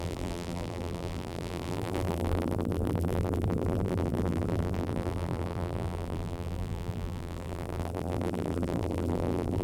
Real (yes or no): no